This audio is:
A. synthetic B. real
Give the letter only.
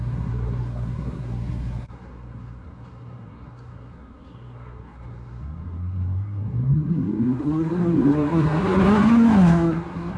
A